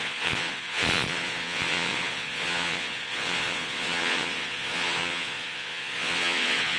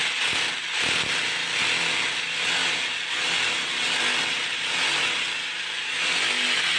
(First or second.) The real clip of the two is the second